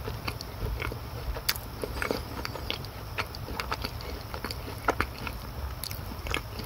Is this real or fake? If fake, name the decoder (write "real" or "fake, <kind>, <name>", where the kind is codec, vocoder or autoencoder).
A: real